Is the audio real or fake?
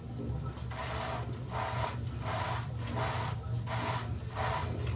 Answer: real